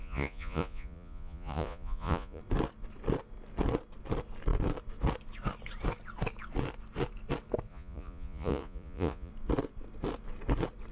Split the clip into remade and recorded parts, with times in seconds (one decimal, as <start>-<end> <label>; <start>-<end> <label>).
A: 0.0-2.4 remade; 2.4-7.7 recorded; 7.7-9.3 remade; 9.3-10.9 recorded